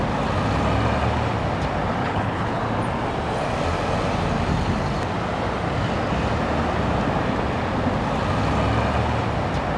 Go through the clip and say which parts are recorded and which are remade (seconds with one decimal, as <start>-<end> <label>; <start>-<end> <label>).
0.0-2.0 recorded; 2.0-2.6 remade; 2.6-9.8 recorded